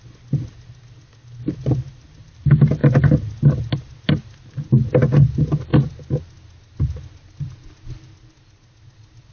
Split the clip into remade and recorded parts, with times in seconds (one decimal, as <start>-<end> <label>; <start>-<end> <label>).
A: 0.0-9.3 recorded